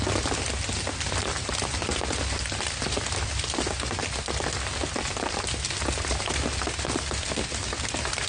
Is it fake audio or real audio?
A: real